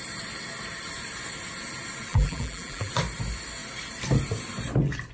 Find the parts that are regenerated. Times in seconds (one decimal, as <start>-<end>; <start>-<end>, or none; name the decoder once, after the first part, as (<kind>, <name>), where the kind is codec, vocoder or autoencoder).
2.1-2.9 (vocoder, BigVGAN v2)